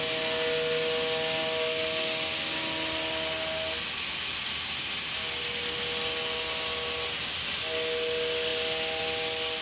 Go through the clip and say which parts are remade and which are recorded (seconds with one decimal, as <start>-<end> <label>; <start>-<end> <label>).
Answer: 0.0-9.6 recorded